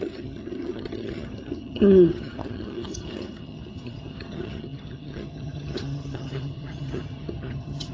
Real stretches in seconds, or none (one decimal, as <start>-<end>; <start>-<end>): none